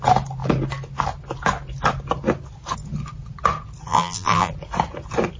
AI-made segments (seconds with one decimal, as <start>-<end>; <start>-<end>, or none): 3.9-4.5